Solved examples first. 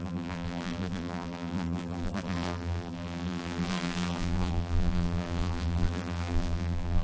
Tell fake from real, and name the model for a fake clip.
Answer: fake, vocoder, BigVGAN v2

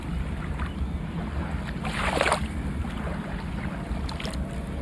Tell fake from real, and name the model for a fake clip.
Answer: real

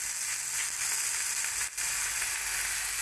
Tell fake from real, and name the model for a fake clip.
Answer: real